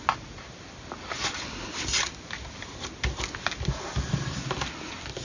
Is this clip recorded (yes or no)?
yes